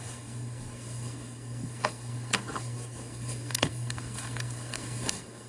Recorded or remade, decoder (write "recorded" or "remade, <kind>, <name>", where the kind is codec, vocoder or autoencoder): remade, codec, SNAC